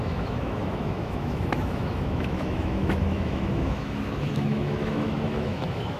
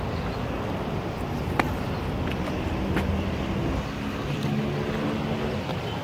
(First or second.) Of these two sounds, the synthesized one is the first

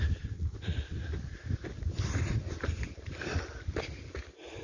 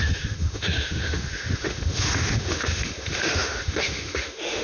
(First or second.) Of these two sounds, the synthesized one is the second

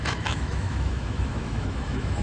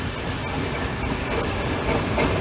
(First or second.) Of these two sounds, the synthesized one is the first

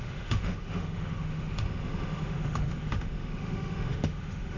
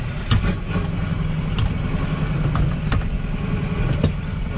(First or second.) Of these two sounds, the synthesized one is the first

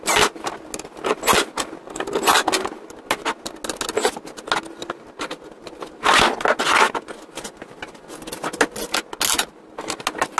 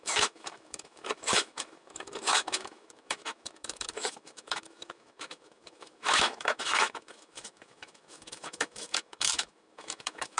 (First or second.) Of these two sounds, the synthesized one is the second